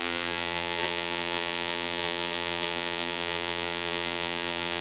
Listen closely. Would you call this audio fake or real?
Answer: fake